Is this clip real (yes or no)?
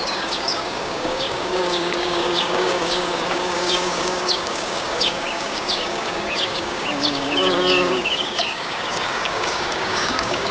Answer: no